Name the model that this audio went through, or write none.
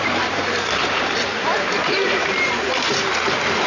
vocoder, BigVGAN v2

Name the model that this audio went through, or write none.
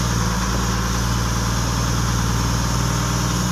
none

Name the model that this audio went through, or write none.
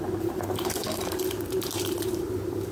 vocoder, BigVGAN v2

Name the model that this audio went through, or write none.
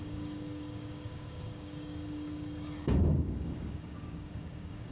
codec, DAC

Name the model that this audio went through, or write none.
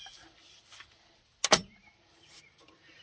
none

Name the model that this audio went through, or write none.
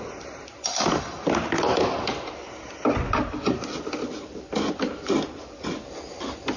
none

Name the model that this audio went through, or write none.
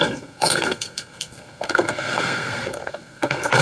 codec, SNAC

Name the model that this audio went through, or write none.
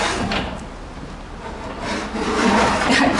none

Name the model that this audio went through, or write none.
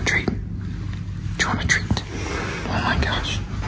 none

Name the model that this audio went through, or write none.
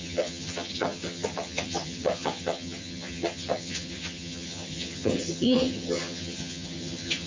vocoder, HiFi-GAN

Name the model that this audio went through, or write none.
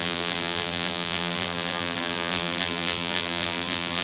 vocoder, BigVGAN v2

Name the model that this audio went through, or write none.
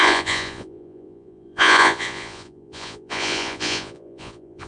vocoder, Vocos